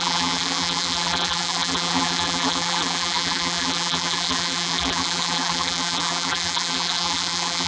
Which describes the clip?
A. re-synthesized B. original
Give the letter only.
A